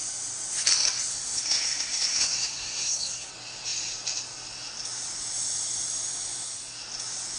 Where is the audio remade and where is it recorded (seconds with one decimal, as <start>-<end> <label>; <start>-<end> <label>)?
0.0-1.1 recorded; 1.1-3.3 remade; 3.3-7.4 recorded